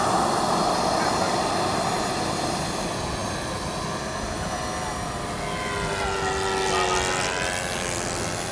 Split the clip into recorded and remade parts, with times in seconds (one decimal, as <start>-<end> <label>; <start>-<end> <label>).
0.0-8.5 recorded